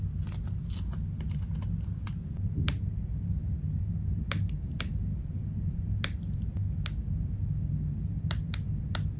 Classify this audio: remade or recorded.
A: recorded